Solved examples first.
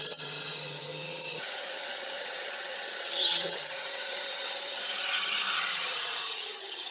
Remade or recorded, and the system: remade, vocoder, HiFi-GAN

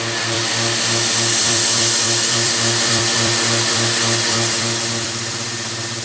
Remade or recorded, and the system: remade, vocoder, BigVGAN v2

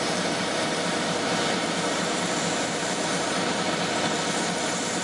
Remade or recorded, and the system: remade, vocoder, BigVGAN v2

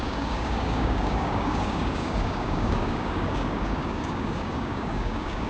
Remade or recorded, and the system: remade, codec, DAC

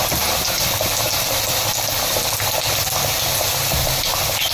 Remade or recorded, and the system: recorded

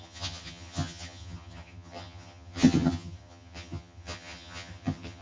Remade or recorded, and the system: remade, vocoder, HiFi-GAN